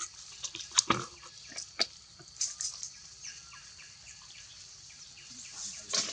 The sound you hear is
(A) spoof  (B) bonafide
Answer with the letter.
B